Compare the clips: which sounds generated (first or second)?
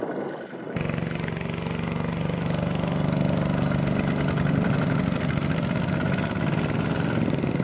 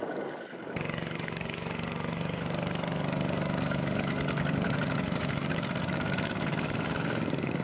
second